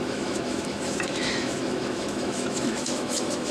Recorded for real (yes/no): no